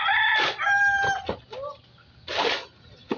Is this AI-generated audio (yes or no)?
no